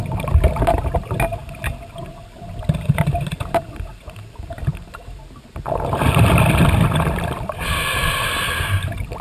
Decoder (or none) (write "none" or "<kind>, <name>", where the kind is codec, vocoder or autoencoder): none